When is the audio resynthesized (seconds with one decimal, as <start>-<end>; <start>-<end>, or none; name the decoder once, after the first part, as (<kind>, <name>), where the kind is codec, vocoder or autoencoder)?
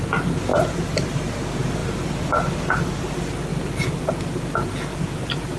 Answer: 0.5-1.4 (vocoder, BigVGAN v2); 3.5-4.4; 4.9-5.6